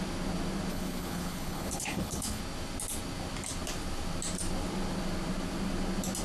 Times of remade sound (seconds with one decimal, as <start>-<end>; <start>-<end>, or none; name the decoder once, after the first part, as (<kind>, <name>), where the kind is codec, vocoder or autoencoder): 0.7-2.4 (codec, HILCodec)